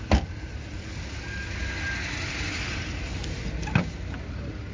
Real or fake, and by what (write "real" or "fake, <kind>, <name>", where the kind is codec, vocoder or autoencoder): real